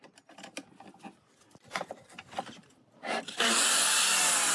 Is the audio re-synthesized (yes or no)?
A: no